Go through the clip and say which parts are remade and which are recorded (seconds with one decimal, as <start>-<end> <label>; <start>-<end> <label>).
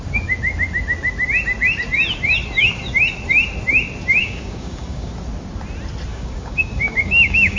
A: 0.0-4.2 recorded; 4.2-5.1 remade; 5.1-6.1 recorded; 6.1-7.6 remade